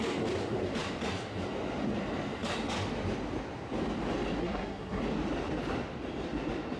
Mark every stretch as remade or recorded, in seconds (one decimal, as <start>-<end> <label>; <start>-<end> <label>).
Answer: 0.0-4.4 recorded; 4.4-5.0 remade; 5.0-6.8 recorded